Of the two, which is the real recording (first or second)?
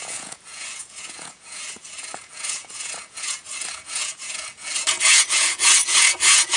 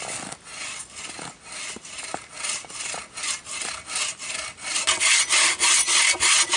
second